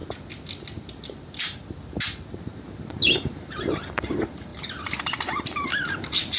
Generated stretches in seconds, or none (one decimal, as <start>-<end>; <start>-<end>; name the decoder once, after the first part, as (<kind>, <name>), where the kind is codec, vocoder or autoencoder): 3.3-6.4 (vocoder, BigVGAN v2)